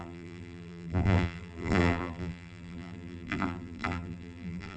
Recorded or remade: remade